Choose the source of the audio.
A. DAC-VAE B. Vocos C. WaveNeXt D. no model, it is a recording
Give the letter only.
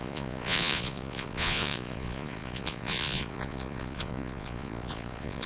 B